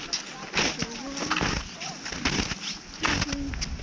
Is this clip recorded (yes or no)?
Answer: yes